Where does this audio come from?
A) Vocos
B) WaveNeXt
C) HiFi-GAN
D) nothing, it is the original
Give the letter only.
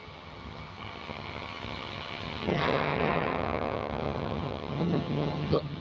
C